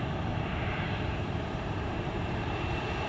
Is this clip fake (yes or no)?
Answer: yes